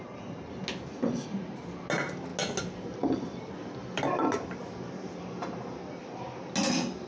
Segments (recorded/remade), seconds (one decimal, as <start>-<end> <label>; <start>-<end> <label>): 0.0-7.1 recorded